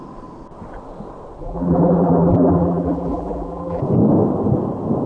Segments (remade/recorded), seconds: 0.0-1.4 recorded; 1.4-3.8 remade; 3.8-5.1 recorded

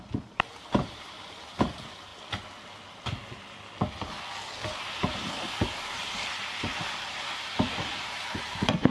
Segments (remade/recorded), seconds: 0.0-2.1 remade; 2.1-4.8 recorded; 4.8-8.9 remade

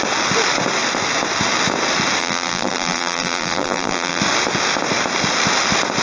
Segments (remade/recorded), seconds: 0.0-2.2 recorded; 2.2-4.2 remade; 4.2-6.0 recorded

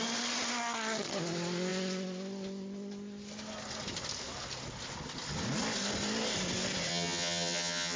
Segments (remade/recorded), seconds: 0.0-6.9 recorded; 6.9-8.0 remade

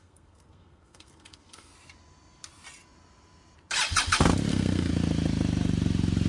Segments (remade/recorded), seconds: 0.0-1.7 remade; 1.7-4.5 recorded; 4.5-4.9 remade; 4.9-6.3 recorded

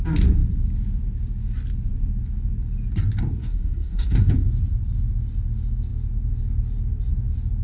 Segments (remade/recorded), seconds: 0.0-3.4 recorded; 3.4-4.3 remade; 4.3-7.6 recorded